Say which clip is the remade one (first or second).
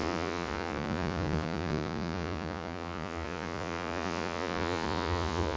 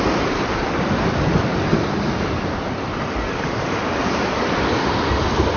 first